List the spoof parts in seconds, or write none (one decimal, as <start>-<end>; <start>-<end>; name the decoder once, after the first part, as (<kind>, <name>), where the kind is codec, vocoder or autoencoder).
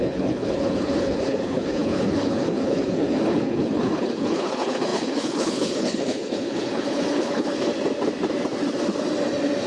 0.0-7.7 (codec, HILCodec)